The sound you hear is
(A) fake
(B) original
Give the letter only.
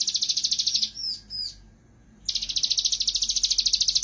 B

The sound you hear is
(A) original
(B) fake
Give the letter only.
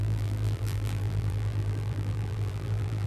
B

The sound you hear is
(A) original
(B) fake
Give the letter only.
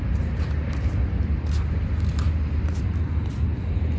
A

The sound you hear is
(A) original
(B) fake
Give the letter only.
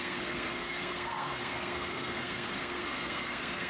B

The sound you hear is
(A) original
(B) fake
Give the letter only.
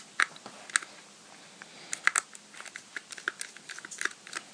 A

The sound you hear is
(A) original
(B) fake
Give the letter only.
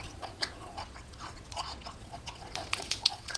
B